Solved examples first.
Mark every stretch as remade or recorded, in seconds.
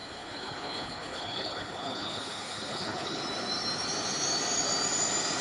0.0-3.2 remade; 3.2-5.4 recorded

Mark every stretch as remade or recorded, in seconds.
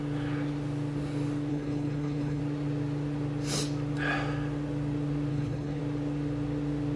0.0-1.5 recorded; 1.5-2.4 remade; 2.4-5.3 recorded; 5.3-5.8 remade; 5.8-7.0 recorded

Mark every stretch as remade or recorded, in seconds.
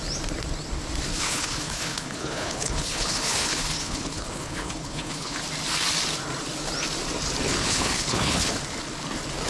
0.0-1.1 recorded; 1.1-5.4 remade; 5.4-7.6 recorded; 7.6-8.5 remade; 8.5-9.5 recorded